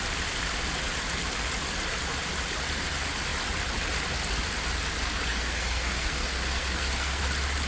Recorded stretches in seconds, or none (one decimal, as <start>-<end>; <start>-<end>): 0.0-5.3; 7.2-7.7